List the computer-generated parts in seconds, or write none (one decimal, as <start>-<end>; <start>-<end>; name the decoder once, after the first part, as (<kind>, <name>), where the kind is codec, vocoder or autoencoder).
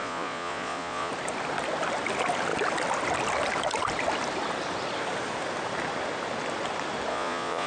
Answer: 0.0-1.1 (vocoder, Vocos); 7.1-7.7